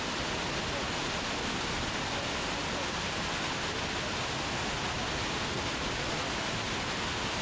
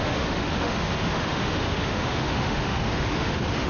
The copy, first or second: second